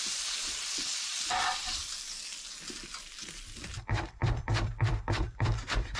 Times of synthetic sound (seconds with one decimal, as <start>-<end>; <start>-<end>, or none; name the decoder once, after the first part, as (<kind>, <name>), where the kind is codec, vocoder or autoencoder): 0.0-1.8 (vocoder, BigVGAN v2); 3.7-6.0